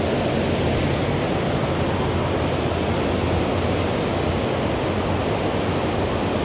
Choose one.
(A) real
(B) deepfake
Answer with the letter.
A